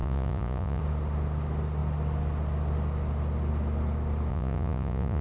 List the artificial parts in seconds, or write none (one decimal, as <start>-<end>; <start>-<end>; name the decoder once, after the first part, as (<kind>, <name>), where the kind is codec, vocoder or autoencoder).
0.0-0.8 (vocoder, Vocos); 4.3-5.2